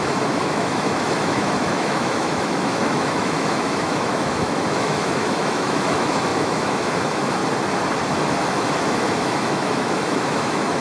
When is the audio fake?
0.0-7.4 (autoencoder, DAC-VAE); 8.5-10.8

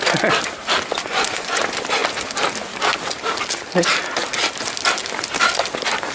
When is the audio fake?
1.1-1.6 (vocoder, Vocos)

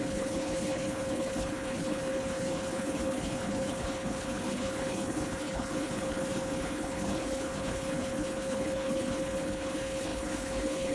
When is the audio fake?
0.0-10.9 (codec, HILCodec)